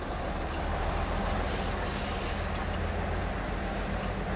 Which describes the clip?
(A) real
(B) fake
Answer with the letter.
A